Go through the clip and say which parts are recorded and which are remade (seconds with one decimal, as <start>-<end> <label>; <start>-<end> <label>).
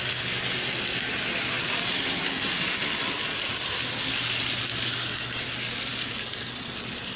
0.0-7.2 recorded